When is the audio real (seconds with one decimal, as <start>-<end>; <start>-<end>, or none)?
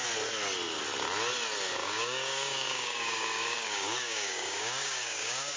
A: 0.0-1.8